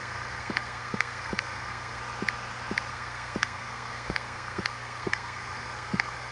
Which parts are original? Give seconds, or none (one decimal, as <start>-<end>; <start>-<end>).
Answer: 2.0-2.9